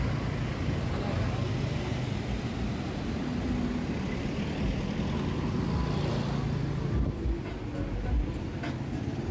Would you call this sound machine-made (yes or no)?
no